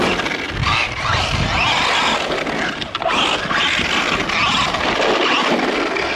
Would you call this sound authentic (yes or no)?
yes